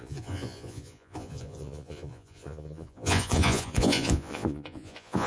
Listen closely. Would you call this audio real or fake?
fake